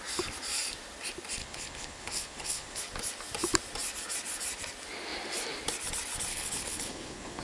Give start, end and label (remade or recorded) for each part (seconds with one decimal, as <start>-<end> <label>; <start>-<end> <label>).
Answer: 0.0-1.4 recorded; 1.4-2.8 remade; 2.8-6.3 recorded; 6.3-7.4 remade

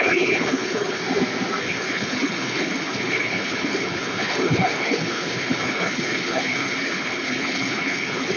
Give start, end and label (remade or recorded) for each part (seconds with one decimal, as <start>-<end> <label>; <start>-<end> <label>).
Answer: 0.0-1.0 remade; 1.0-1.6 recorded; 1.6-8.4 remade